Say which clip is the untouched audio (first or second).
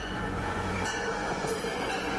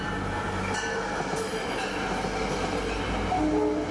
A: second